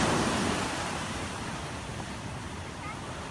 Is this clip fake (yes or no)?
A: yes